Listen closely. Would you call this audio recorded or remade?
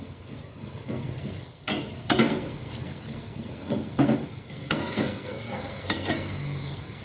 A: remade